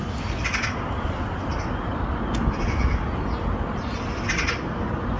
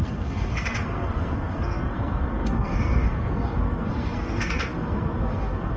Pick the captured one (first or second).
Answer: first